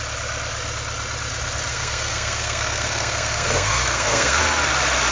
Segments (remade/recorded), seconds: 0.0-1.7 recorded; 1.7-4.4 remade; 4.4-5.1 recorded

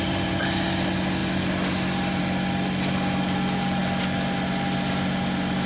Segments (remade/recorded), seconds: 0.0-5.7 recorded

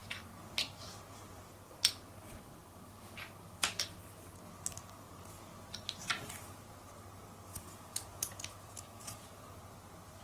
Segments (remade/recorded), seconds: 0.0-7.5 recorded; 7.5-9.4 remade; 9.4-10.2 recorded

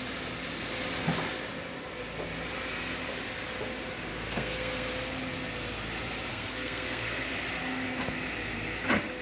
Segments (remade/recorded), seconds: 0.0-4.1 recorded; 4.1-4.9 remade; 4.9-6.3 recorded; 6.3-7.3 remade; 7.3-9.2 recorded

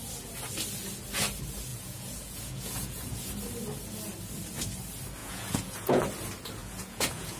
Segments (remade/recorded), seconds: 0.0-1.7 recorded; 1.7-3.3 remade; 3.3-5.2 recorded; 5.2-6.0 remade; 6.0-6.6 recorded; 6.6-7.4 remade

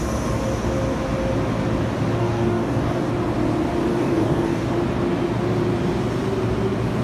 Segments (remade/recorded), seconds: 0.0-2.2 recorded; 2.2-3.1 remade; 3.1-3.9 recorded; 3.9-4.7 remade; 4.7-7.0 recorded

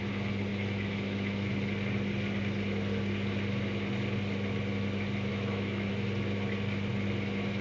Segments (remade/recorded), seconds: 0.0-0.5 recorded; 0.5-1.5 remade; 1.5-5.3 recorded; 5.3-5.9 remade; 5.9-7.6 recorded